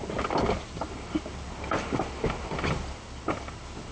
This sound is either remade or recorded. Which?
recorded